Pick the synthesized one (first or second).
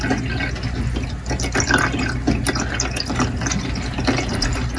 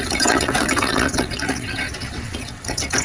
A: second